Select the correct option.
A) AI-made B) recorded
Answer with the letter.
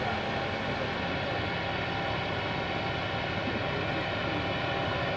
B